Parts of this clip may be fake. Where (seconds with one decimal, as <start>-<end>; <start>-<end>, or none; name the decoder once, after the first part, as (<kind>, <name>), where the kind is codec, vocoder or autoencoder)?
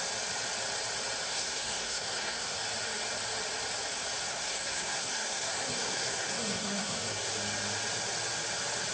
1.3-2.6 (codec, SNAC); 4.3-7.3